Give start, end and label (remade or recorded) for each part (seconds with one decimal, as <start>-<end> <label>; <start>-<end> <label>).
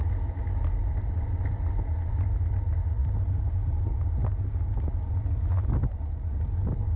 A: 0.0-7.0 recorded